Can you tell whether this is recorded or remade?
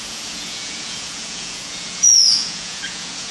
remade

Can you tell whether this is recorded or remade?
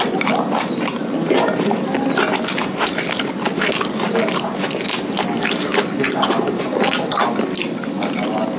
recorded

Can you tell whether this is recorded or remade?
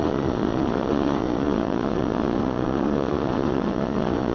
remade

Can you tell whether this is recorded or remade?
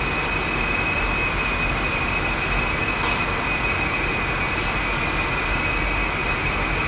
recorded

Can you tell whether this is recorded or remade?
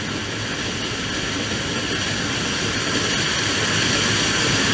recorded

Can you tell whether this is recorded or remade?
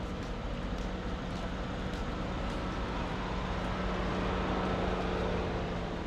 recorded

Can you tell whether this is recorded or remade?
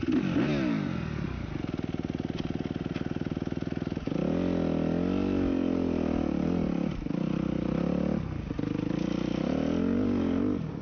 recorded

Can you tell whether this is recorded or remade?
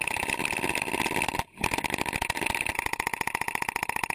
recorded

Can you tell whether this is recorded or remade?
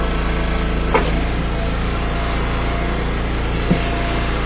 recorded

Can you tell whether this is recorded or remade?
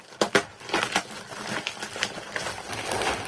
recorded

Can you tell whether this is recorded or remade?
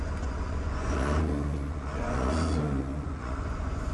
remade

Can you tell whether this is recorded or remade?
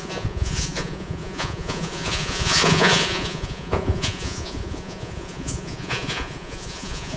remade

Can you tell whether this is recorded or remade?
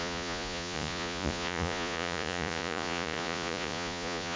remade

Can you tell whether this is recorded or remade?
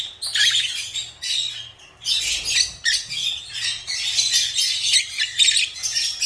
recorded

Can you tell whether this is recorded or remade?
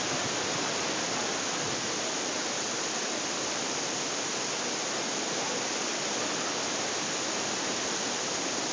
recorded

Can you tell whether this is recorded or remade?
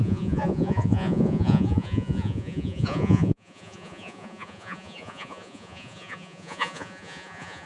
remade